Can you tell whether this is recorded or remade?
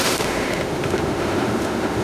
remade